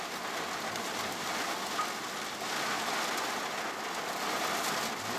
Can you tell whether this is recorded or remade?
recorded